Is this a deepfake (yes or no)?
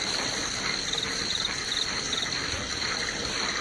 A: yes